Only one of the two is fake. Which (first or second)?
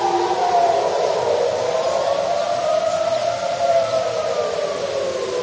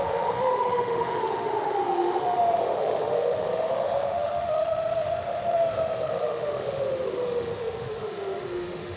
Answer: second